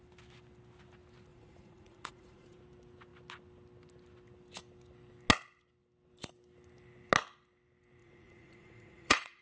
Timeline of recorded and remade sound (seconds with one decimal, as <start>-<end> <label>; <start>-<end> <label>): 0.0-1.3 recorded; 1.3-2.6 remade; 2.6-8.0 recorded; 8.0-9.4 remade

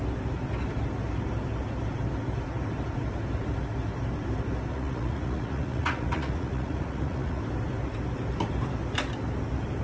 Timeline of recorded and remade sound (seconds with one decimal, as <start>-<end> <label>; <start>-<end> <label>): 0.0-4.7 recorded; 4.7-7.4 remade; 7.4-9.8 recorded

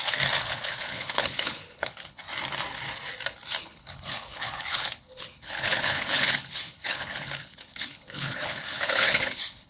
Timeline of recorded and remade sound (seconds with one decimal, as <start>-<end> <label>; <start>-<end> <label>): 0.0-2.2 remade; 2.2-3.6 recorded; 3.6-9.7 remade